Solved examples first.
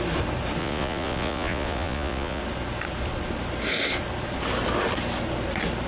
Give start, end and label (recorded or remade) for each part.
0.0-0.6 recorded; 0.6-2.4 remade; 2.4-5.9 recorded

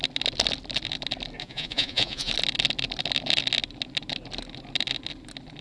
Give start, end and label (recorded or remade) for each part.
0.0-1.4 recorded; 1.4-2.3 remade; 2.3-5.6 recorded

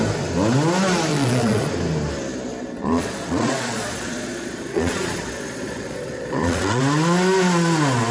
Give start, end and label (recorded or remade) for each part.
0.0-1.1 recorded; 1.1-1.7 remade; 1.7-2.8 recorded; 2.8-6.8 remade; 6.8-8.1 recorded